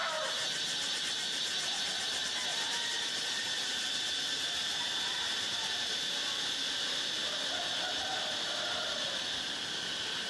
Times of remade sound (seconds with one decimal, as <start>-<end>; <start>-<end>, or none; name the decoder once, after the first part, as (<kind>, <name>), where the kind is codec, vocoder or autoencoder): none